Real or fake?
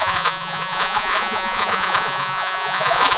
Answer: fake